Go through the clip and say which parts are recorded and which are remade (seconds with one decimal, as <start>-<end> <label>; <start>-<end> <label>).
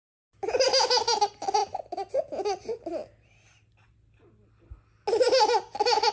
0.0-6.1 recorded